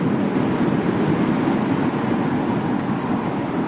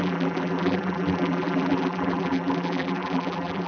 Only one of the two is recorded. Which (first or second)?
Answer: first